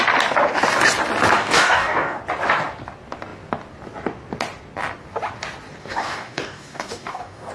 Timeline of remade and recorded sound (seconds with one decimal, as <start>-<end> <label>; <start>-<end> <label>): 0.0-1.4 recorded; 1.4-2.2 remade; 2.2-5.8 recorded; 5.8-7.5 remade